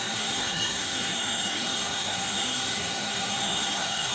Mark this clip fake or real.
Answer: fake